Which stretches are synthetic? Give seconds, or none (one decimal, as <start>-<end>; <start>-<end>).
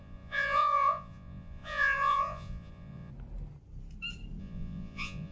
0.0-3.1; 4.4-5.3